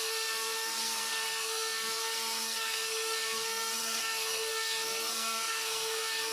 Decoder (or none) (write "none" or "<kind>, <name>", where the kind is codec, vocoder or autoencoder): codec, SNAC